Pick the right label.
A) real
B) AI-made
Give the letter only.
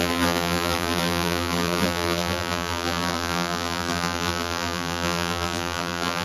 B